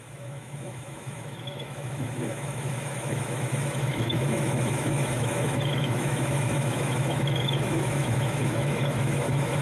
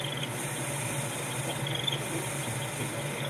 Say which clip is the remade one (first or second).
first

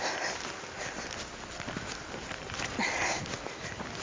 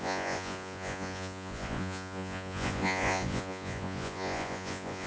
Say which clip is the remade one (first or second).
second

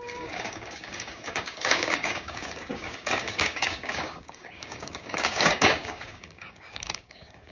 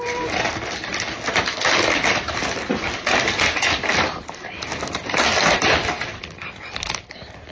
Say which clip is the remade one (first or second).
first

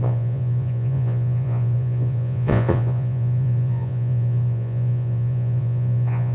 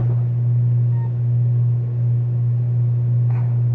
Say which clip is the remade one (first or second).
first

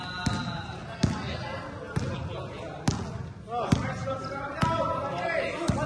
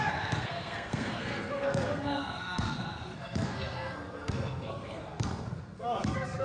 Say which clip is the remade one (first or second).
second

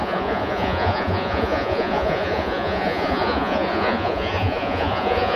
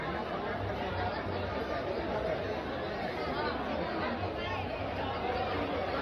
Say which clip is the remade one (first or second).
first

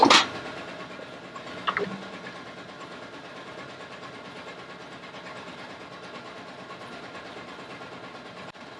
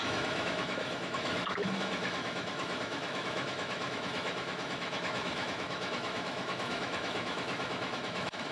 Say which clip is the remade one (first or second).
second